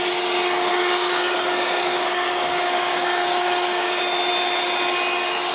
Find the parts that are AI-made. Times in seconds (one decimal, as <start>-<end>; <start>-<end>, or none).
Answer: 0.7-4.0